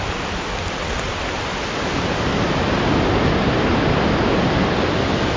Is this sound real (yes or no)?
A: yes